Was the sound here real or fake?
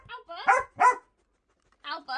real